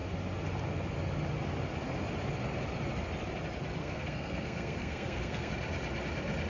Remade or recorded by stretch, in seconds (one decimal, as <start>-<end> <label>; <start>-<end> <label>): 0.0-3.8 recorded; 3.8-5.5 remade; 5.5-6.5 recorded